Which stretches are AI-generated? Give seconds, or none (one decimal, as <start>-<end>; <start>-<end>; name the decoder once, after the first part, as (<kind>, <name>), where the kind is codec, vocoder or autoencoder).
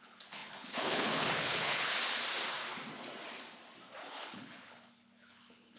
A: 0.0-1.9 (codec, HILCodec); 4.0-5.8